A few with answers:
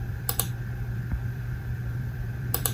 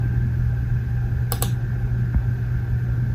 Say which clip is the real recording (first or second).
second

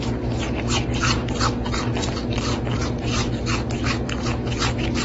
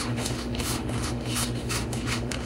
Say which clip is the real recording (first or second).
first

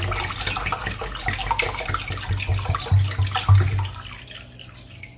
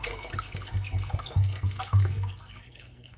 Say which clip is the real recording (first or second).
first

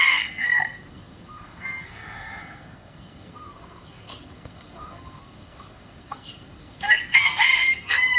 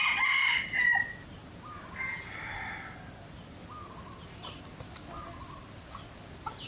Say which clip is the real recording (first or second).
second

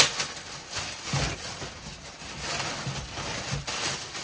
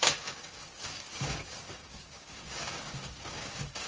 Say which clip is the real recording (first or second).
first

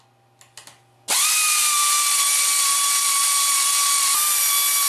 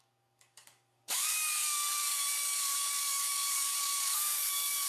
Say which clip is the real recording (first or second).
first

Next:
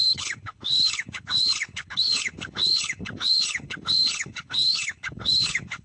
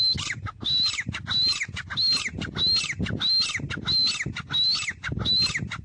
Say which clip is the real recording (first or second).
second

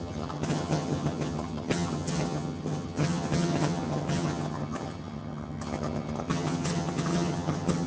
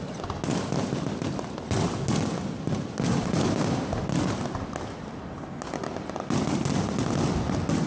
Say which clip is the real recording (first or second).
second